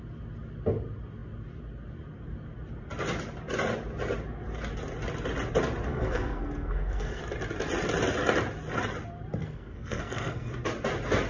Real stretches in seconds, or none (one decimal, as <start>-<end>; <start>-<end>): 0.0-5.9; 7.2-9.4; 10.5-11.3